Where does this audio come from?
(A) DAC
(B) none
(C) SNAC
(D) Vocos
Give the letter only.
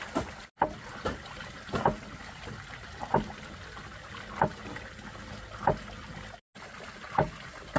B